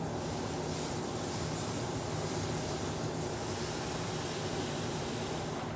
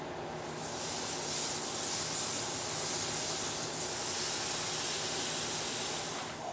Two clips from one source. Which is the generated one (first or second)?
first